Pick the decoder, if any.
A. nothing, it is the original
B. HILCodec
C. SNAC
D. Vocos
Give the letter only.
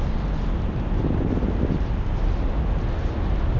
A